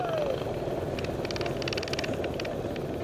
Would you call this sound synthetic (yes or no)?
no